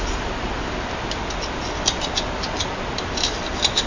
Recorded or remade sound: recorded